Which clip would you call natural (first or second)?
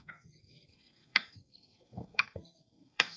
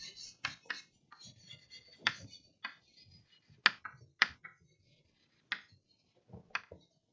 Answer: second